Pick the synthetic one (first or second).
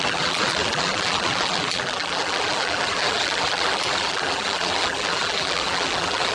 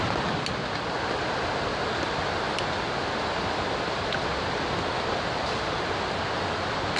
first